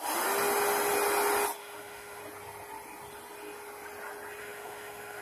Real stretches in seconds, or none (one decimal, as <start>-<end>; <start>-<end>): 0.0-1.6; 2.2-4.4